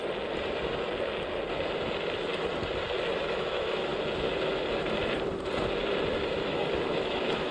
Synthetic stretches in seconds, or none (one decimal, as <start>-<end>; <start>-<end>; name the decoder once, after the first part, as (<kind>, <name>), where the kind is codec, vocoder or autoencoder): 3.1-3.9 (autoencoder, DAC-VAE); 6.2-7.5

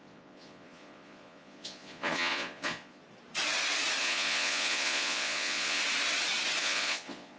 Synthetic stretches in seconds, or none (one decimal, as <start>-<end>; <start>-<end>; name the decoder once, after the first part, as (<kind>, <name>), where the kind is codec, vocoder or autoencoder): 0.0-3.0 (vocoder, Vocos); 4.0-5.8; 6.6-7.4

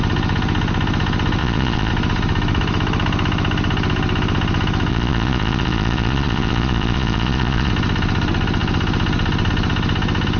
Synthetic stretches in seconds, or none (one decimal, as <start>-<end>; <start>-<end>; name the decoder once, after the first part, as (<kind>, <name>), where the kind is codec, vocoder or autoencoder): 1.4-1.9 (vocoder, Vocos); 4.9-7.7

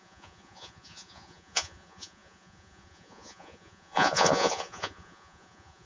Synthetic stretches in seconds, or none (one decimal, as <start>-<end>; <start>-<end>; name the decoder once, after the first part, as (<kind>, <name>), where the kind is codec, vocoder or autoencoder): 0.0-5.9 (vocoder, Vocos)

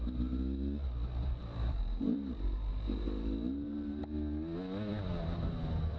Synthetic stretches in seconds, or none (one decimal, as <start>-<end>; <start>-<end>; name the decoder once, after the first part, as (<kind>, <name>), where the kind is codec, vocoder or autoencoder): 1.2-4.0 (vocoder, BigVGAN v2); 4.9-6.0

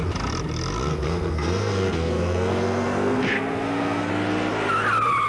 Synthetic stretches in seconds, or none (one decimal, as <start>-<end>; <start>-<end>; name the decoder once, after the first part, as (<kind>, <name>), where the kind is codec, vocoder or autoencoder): 0.9-4.1 (codec, SNAC)